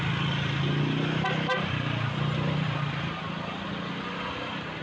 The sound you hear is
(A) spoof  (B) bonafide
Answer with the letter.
B